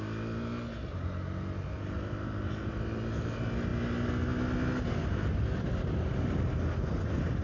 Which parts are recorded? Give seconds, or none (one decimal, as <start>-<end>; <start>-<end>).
0.0-7.4